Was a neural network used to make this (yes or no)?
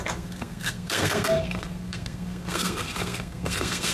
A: yes